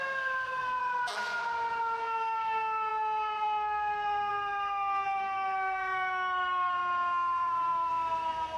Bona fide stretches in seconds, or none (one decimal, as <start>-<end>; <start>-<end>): 0.8-2.0